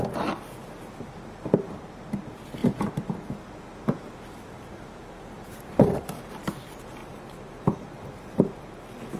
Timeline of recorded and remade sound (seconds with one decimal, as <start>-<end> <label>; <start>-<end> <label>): 0.0-2.6 recorded; 2.6-6.4 remade; 6.4-7.0 recorded; 7.0-7.9 remade; 7.9-9.2 recorded